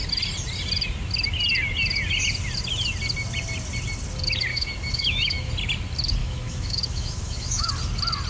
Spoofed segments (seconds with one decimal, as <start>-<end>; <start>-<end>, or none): 4.5-5.5; 6.2-7.7